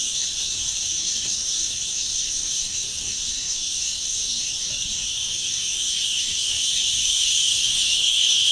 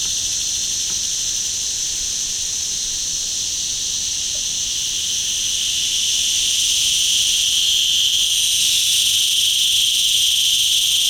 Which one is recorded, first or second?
second